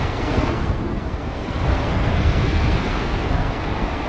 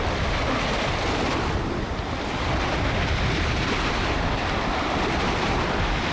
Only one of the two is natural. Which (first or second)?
second